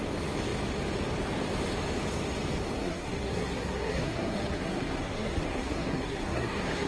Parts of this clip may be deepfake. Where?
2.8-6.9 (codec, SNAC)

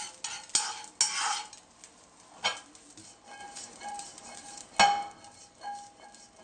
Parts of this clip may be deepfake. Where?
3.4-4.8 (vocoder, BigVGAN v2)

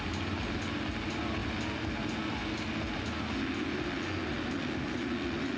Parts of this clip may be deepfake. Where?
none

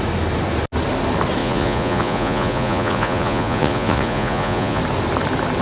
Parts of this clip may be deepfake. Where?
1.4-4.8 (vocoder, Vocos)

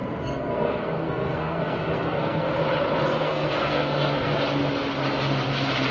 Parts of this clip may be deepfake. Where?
0.0-2.5 (codec, SNAC); 3.1-4.3

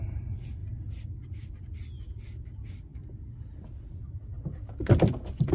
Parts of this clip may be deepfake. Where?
0.0-5.5 (vocoder, BigVGAN v2)